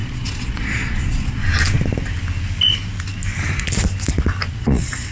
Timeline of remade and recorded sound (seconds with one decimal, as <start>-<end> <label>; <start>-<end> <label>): 0.0-1.4 remade; 1.4-4.5 recorded; 4.5-5.1 remade